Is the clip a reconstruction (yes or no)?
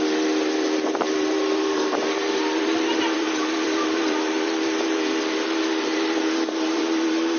yes